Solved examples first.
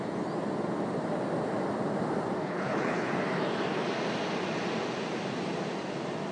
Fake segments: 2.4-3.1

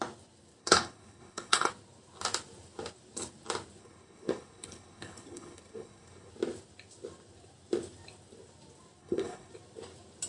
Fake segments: 0.6-1.7; 3.8-6.3; 9.0-9.5

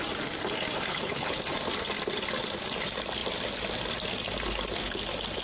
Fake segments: 0.9-1.4

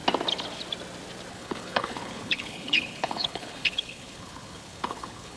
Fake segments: 1.3-5.4

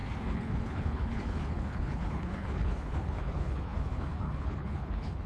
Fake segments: 0.0-5.3

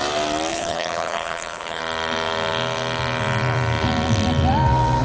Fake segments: 0.5-1.8